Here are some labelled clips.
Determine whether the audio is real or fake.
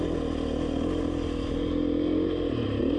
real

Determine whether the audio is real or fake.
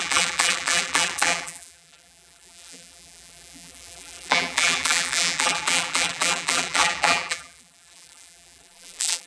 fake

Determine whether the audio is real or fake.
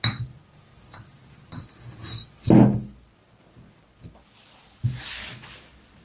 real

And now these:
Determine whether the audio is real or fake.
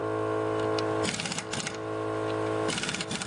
fake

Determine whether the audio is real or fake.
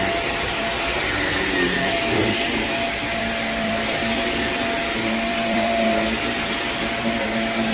fake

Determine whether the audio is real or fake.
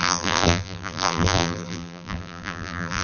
fake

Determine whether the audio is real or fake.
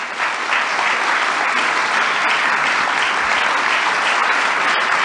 real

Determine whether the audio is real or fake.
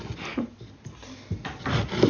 real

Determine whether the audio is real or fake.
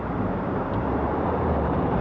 fake